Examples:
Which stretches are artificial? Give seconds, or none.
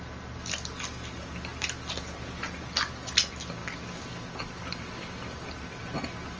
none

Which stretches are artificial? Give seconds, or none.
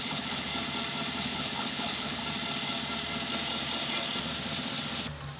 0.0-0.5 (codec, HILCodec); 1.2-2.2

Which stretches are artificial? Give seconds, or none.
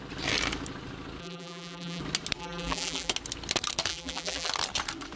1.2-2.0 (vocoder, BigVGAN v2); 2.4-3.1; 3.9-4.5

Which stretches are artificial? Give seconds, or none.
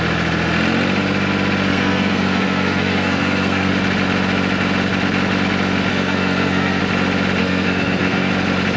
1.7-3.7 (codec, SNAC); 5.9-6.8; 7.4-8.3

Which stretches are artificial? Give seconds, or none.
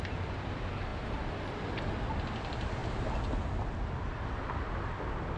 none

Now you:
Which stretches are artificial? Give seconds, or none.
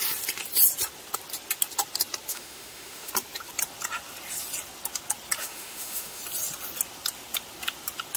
2.3-3.1 (autoencoder, DAC-VAE); 5.4-6.2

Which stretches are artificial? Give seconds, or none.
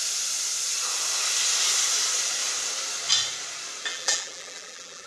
3.9-5.1 (vocoder, BigVGAN v2)